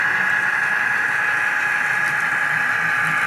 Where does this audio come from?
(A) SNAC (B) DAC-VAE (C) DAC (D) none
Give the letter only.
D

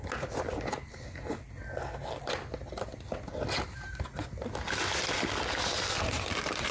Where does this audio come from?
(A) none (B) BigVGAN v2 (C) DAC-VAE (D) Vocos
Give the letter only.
A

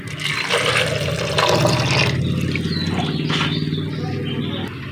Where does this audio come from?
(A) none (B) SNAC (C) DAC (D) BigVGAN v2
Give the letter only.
A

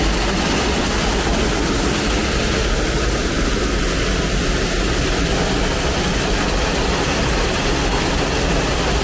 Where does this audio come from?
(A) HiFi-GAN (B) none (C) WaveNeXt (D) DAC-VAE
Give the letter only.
B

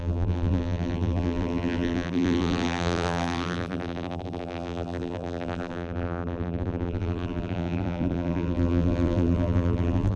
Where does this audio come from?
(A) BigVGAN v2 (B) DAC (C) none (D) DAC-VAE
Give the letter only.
A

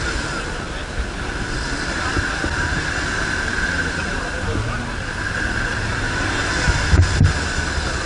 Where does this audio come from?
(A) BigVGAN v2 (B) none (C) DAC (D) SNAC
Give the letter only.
B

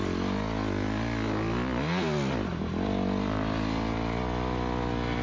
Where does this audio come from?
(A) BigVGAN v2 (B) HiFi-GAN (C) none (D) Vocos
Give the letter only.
C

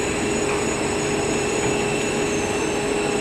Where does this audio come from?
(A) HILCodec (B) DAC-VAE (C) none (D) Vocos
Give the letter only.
C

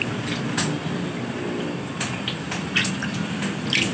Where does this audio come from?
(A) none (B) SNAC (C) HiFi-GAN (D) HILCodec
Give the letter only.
A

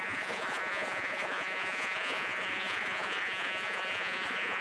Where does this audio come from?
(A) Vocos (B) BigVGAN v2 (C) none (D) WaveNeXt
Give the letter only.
A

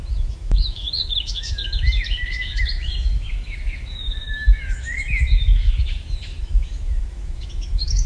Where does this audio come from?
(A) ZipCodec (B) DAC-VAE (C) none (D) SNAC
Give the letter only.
B